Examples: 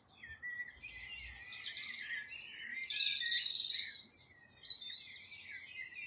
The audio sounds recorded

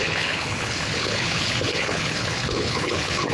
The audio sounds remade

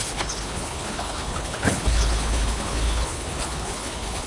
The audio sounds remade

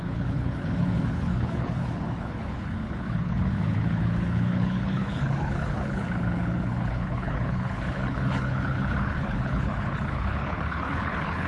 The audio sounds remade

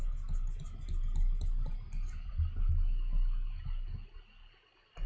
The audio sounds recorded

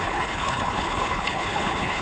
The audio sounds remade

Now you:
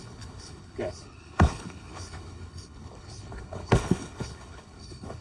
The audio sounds remade